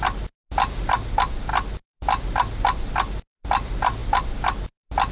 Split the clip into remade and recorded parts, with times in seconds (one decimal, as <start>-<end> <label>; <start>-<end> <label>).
0.0-5.1 recorded